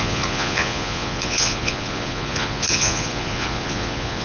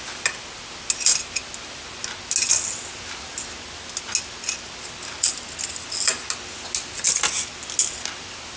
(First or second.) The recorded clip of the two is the second